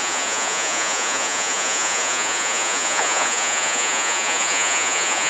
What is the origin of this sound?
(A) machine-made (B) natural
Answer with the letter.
A